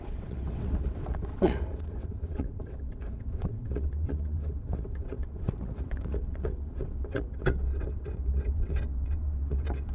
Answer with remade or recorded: remade